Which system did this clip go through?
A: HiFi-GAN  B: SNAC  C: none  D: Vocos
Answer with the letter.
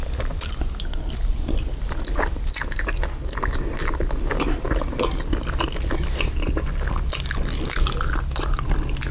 C